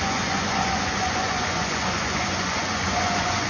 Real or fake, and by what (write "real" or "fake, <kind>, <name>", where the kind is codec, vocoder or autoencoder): fake, vocoder, Vocos